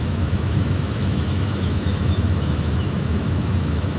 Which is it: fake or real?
fake